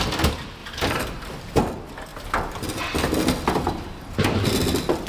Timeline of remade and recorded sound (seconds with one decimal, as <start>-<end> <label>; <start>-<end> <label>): 0.0-0.6 recorded; 0.6-1.6 remade; 1.6-5.1 recorded